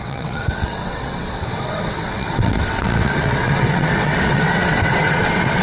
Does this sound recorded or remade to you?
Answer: remade